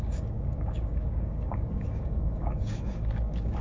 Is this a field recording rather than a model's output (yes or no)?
no